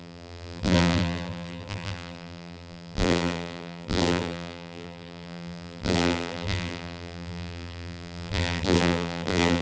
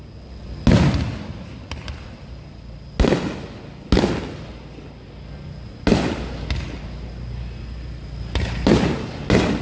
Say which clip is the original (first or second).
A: second